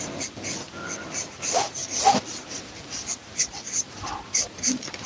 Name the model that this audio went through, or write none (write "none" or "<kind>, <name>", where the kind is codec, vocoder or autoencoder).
none